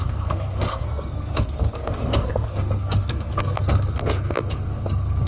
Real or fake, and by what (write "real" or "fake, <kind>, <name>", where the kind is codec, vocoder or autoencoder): fake, codec, SNAC